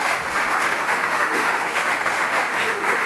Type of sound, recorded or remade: remade